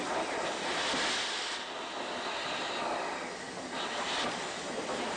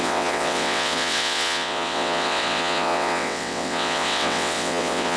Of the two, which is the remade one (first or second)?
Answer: second